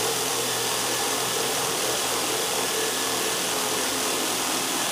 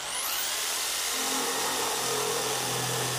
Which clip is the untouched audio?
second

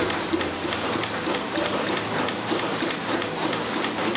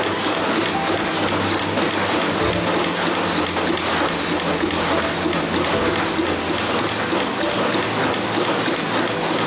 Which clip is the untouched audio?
second